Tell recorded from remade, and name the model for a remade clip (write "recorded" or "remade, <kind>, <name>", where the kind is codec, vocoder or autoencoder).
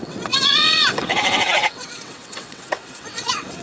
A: remade, vocoder, WaveNeXt